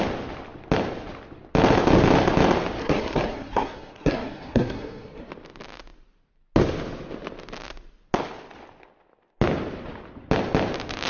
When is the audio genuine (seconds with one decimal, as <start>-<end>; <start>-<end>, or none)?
0.0-2.8; 5.3-11.1